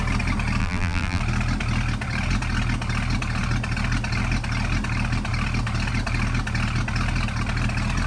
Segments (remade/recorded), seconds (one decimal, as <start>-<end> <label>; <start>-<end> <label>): 0.0-0.6 recorded; 0.6-1.2 remade; 1.2-8.1 recorded